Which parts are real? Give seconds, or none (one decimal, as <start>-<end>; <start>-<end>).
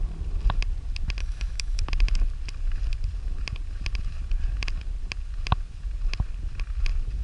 0.0-1.2; 1.8-7.2